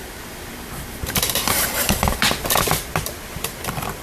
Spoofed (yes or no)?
yes